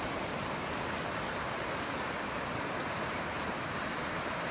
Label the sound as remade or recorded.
recorded